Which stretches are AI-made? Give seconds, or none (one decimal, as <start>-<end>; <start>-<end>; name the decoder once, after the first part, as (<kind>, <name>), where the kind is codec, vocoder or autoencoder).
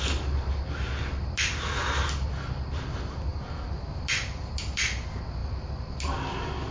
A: none